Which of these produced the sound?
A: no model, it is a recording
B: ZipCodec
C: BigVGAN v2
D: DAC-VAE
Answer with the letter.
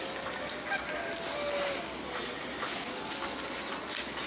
A